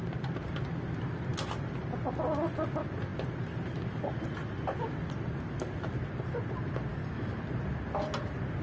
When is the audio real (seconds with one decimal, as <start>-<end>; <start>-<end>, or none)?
0.0-6.9; 7.4-8.6